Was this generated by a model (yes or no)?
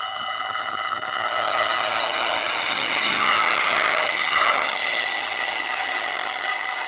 yes